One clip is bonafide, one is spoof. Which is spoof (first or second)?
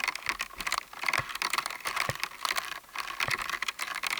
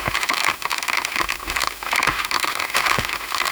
second